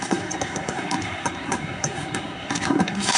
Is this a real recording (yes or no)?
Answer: no